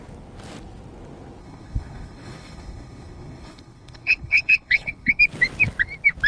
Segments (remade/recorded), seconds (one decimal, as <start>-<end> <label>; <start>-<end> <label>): 0.0-1.4 recorded; 1.4-5.2 remade; 5.2-6.3 recorded